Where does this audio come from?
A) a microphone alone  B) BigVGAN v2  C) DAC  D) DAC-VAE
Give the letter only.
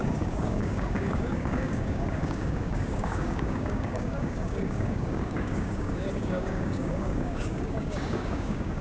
C